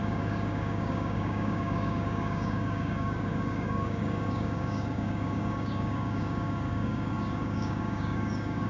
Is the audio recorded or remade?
remade